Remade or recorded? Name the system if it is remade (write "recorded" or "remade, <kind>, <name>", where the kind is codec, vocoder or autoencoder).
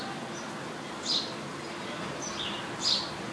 recorded